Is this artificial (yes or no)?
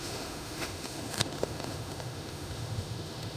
yes